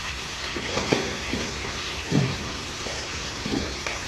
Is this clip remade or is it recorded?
remade